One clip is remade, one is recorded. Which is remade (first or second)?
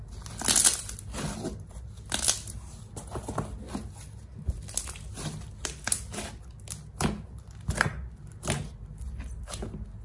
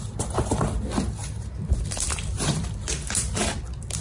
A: second